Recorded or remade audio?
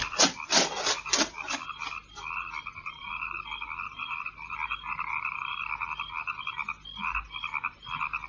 recorded